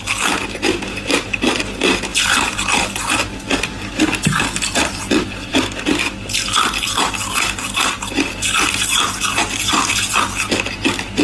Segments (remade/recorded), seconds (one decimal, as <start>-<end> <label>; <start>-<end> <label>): 0.0-11.2 recorded